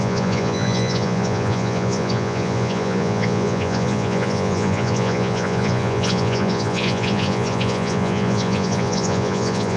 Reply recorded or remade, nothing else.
remade